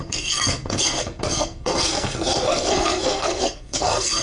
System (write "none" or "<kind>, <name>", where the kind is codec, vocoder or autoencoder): codec, SNAC